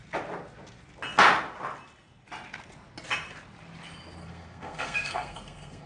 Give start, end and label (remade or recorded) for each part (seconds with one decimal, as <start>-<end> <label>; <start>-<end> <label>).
0.0-4.2 recorded; 4.2-5.9 remade